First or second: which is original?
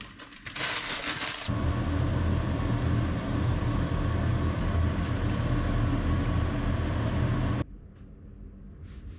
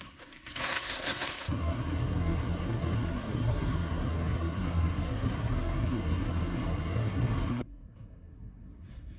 first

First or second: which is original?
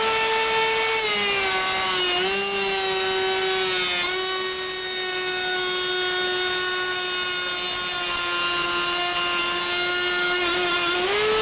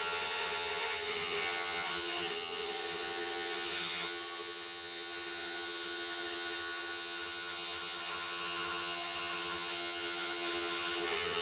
first